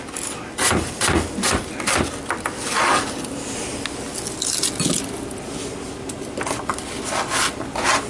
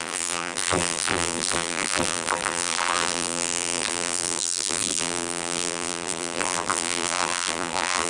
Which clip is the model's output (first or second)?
second